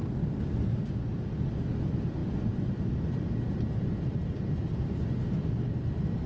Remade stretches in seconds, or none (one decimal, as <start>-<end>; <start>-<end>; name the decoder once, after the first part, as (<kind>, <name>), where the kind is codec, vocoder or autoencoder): 2.2-5.3 (vocoder, BigVGAN v2)